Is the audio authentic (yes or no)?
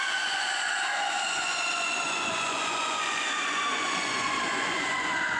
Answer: no